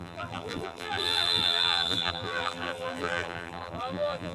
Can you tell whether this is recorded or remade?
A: remade